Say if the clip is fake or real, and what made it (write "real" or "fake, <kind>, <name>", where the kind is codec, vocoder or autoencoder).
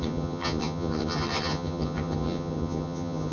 fake, vocoder, HiFi-GAN